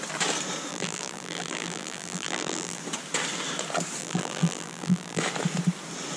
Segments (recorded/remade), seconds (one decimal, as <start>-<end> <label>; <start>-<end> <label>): 0.0-0.7 recorded; 0.7-2.8 remade; 2.8-4.0 recorded; 4.0-5.2 remade; 5.2-6.2 recorded